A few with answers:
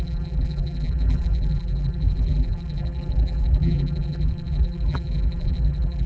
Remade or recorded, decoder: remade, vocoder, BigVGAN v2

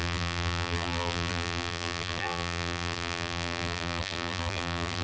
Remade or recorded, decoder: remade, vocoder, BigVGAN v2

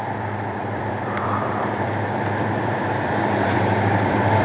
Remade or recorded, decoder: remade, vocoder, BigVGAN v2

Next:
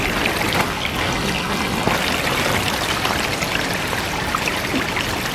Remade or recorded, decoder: recorded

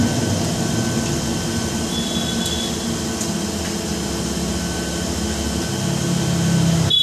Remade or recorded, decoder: recorded